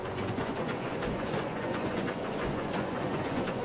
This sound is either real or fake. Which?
fake